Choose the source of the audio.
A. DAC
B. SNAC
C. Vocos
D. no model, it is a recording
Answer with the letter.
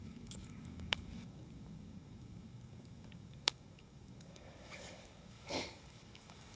A